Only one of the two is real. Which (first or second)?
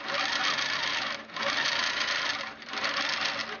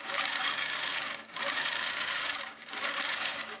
first